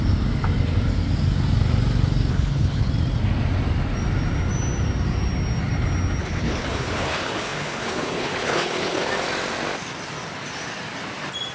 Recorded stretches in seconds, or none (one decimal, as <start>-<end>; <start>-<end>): 0.0-2.3; 2.9-6.2; 9.1-11.5